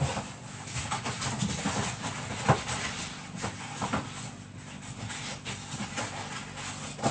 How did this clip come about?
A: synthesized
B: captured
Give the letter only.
B